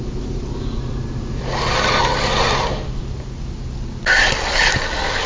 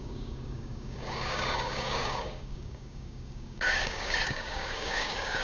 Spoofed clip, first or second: second